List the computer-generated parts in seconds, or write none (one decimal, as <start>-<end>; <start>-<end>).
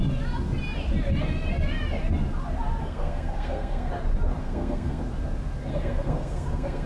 2.8-3.9; 4.4-5.0; 5.7-6.9